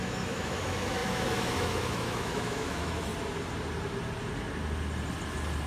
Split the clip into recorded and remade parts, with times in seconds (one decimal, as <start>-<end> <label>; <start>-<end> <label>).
0.0-3.1 remade; 3.1-5.7 recorded